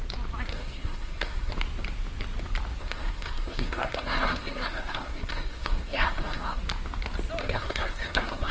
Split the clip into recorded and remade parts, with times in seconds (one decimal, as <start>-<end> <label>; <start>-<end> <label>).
0.0-0.5 recorded; 0.5-1.5 remade; 1.5-2.8 recorded; 2.8-6.6 remade; 6.6-7.4 recorded; 7.4-8.5 remade